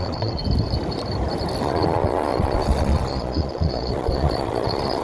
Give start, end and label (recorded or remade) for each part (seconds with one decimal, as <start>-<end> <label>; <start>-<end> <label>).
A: 0.0-0.4 remade; 0.4-1.6 recorded; 1.6-5.0 remade